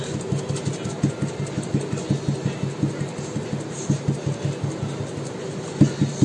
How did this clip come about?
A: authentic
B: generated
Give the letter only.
A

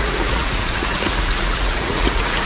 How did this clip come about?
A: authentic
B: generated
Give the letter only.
B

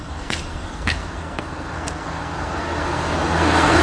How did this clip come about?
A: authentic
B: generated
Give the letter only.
B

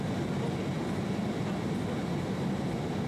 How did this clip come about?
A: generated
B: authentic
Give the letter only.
B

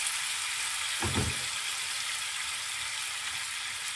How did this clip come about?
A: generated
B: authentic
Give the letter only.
B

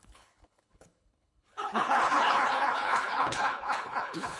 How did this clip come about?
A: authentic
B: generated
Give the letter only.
B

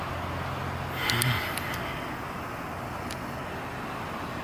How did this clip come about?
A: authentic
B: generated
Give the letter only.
A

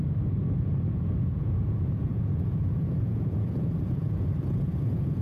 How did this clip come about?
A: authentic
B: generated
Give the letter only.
B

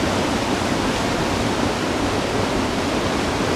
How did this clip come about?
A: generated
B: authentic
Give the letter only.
B